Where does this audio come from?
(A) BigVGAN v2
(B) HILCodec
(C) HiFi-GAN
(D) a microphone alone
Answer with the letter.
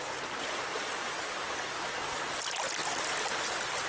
D